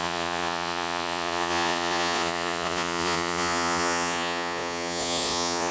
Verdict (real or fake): fake